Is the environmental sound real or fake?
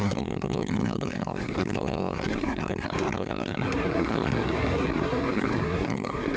fake